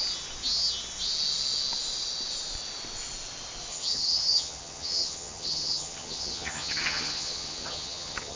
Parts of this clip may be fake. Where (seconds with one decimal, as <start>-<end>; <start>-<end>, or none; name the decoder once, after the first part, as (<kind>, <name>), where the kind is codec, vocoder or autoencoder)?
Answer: 3.7-8.4 (vocoder, HiFi-GAN)